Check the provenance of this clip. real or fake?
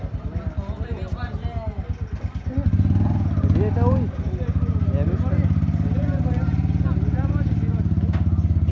real